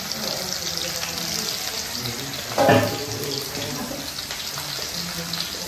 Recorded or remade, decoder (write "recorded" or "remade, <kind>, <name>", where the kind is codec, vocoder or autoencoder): recorded